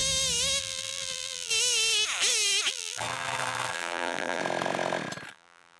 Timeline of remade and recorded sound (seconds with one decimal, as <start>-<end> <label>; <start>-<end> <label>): 0.0-0.6 recorded; 0.6-1.5 remade; 1.5-2.7 recorded; 2.7-4.4 remade; 4.4-5.3 recorded; 5.3-5.8 remade